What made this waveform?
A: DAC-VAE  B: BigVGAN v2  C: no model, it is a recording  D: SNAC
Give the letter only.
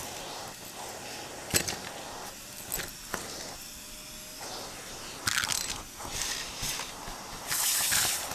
C